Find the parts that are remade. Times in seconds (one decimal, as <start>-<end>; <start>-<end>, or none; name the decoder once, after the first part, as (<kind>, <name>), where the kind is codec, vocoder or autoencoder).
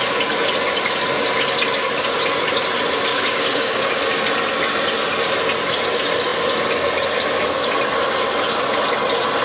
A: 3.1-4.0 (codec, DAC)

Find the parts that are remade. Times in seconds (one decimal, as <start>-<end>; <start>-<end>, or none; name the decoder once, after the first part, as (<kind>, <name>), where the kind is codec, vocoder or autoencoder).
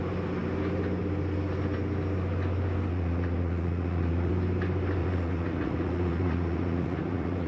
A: 2.9-4.3 (vocoder, Vocos); 5.0-7.5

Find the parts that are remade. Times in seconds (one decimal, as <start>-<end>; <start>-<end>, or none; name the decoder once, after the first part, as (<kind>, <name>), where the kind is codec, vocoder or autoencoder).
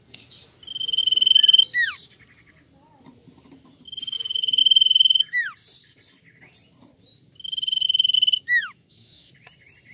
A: 8.6-9.3 (autoencoder, DAC-VAE)